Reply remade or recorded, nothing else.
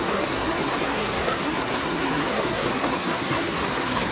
remade